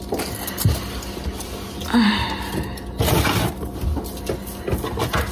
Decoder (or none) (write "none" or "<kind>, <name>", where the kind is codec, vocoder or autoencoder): none